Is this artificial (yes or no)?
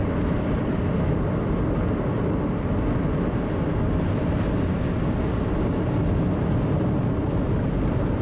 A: no